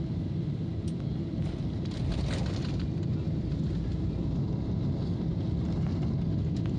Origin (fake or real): real